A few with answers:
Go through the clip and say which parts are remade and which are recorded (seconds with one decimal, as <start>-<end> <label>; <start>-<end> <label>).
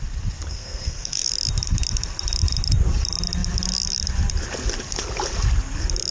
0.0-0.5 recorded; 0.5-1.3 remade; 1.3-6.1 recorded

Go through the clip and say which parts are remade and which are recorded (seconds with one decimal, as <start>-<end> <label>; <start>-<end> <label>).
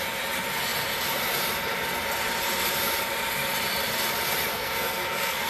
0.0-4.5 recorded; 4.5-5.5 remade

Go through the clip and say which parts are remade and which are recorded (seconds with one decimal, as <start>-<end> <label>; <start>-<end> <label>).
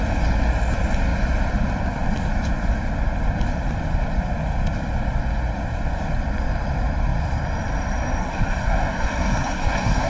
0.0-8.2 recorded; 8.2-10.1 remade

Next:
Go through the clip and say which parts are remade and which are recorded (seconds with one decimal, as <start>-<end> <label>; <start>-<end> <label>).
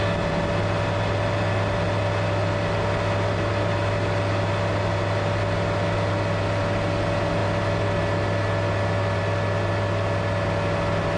0.0-11.2 recorded